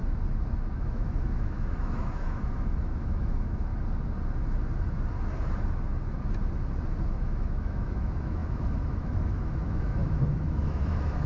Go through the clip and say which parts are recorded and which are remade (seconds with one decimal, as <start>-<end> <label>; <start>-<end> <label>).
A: 0.0-0.7 recorded; 0.7-3.7 remade; 3.7-7.1 recorded; 7.1-11.3 remade